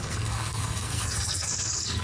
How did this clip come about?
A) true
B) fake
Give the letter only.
B